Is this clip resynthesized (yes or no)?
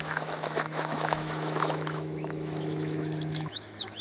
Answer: yes